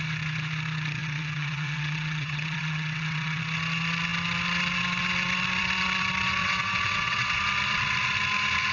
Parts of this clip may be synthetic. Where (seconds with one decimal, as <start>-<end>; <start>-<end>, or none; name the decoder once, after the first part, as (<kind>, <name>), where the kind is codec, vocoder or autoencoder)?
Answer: 1.0-3.4 (vocoder, WaveNeXt); 6.4-7.4